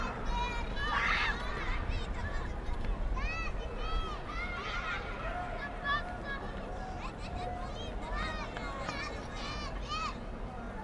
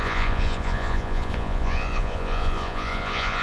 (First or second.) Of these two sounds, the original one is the first